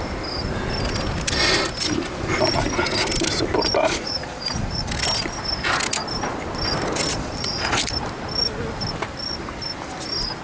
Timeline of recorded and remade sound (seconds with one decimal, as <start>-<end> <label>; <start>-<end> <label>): 0.0-3.8 recorded; 3.8-4.9 remade; 4.9-7.1 recorded; 7.1-7.8 remade; 7.8-10.4 recorded